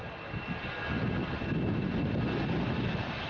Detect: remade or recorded recorded